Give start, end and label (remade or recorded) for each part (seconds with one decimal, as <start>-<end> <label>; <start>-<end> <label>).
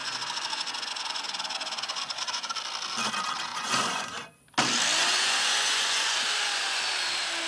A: 0.0-2.5 remade; 2.5-3.5 recorded; 3.5-4.1 remade; 4.1-5.0 recorded; 5.0-6.9 remade; 6.9-7.5 recorded